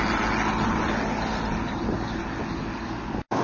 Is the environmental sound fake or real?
real